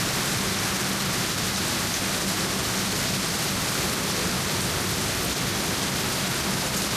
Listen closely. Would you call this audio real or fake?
real